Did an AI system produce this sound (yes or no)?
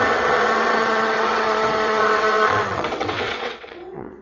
yes